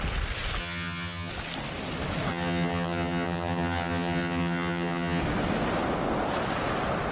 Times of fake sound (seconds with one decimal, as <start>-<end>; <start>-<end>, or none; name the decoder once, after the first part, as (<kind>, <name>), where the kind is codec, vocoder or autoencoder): 0.6-1.3 (vocoder, HiFi-GAN); 2.3-5.2